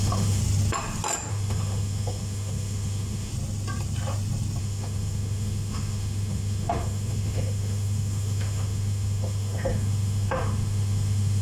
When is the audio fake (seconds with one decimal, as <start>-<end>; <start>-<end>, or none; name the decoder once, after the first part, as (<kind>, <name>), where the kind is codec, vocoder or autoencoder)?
0.0-0.4 (autoencoder, DAC-VAE); 1.3-3.3; 4.6-11.4